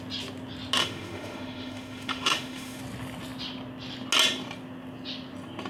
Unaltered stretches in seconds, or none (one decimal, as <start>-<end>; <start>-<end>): 0.0-0.8; 2.8-5.7

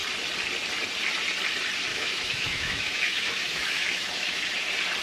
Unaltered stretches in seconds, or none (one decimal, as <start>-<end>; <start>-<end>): 0.0-1.9; 4.4-5.0

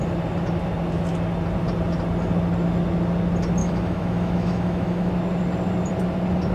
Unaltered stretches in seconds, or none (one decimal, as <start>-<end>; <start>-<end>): 0.0-3.6; 5.1-6.5

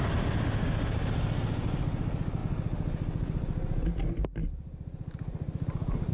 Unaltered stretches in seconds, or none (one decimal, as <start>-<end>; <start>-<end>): 0.0-6.1

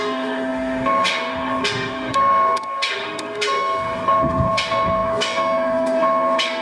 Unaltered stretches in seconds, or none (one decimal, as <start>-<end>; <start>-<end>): none